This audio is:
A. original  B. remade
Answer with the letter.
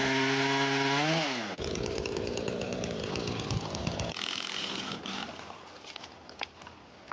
A